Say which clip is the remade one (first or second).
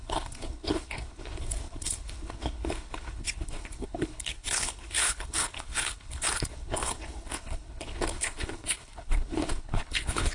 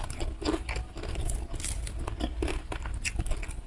first